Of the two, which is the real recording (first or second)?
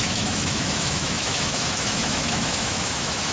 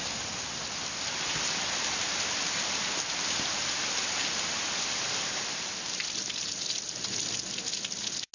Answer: second